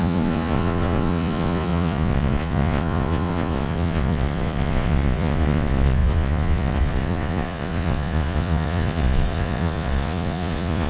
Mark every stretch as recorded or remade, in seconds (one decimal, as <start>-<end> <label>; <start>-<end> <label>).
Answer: 0.0-10.9 remade